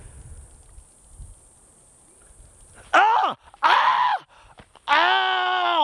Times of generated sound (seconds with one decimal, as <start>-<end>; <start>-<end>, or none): 4.1-4.9

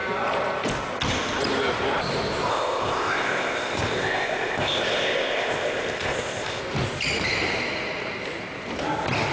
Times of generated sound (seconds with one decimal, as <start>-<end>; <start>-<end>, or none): 2.5-6.6

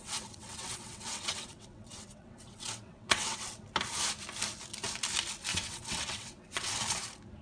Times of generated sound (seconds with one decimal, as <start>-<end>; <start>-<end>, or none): 0.0-3.6; 5.5-6.7